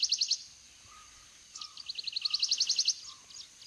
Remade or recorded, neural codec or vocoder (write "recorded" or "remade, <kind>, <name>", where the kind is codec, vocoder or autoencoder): recorded